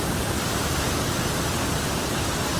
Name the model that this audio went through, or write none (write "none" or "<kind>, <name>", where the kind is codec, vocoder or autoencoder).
none